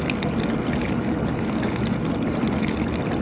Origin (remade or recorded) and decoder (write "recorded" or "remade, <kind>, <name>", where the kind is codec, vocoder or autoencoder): recorded